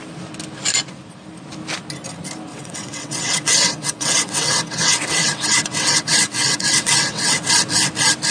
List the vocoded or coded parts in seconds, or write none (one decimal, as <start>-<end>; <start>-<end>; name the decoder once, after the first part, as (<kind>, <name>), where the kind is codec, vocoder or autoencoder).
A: 2.5-7.5 (vocoder, WaveNeXt)